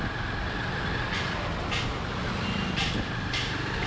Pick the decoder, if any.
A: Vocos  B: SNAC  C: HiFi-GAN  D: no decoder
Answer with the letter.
D